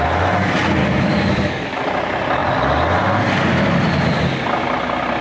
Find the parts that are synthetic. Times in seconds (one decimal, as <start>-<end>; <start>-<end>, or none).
0.8-1.9